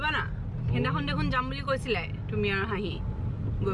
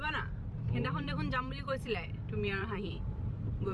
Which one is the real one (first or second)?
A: first